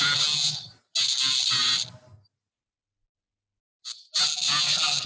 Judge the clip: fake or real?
real